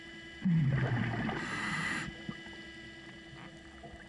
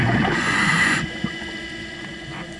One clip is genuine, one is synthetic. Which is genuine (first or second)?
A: first